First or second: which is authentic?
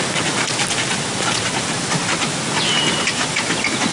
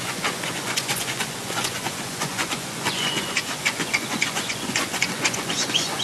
first